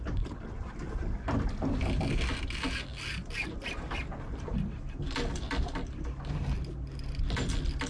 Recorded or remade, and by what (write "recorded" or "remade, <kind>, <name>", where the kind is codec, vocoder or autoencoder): recorded